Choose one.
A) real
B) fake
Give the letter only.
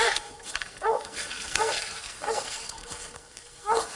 B